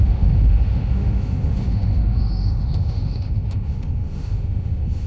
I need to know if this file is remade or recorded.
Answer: remade